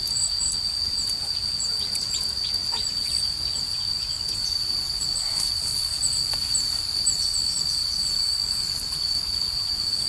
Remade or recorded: recorded